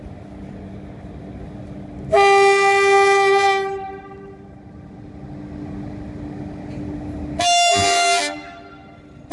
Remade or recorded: recorded